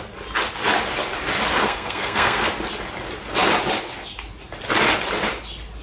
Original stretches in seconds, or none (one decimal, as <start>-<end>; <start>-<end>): 0.0-1.5; 2.5-5.8